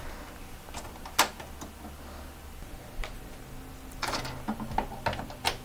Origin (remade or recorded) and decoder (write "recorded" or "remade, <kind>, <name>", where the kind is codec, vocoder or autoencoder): recorded